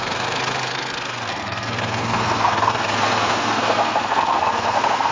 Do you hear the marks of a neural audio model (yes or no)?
yes